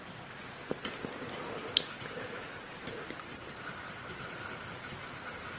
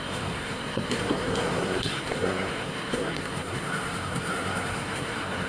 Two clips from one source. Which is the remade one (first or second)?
second